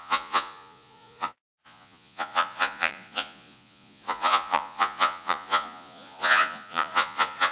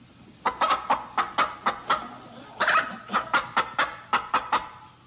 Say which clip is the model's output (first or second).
first